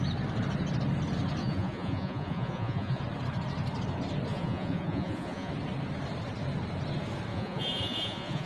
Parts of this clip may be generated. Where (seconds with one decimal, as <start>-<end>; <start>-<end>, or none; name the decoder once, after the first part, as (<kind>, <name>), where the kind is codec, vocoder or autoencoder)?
1.4-3.0 (vocoder, Vocos); 4.3-5.5; 7.3-8.5